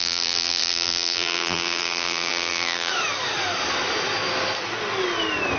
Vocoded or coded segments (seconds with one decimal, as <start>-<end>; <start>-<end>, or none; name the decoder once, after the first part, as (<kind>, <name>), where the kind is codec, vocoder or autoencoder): 0.0-2.9 (vocoder, BigVGAN v2)

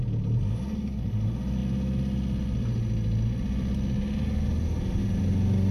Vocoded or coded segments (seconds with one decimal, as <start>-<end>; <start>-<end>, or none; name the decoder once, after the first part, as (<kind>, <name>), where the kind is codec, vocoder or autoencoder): none